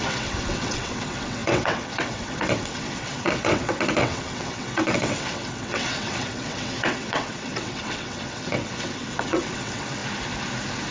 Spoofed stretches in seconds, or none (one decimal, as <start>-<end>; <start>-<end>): 0.0-10.0